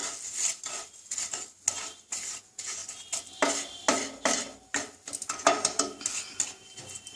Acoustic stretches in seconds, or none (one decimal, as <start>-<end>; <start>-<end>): 0.0-2.4; 2.8-7.2